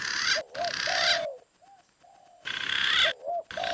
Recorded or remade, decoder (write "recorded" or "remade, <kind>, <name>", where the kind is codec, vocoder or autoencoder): recorded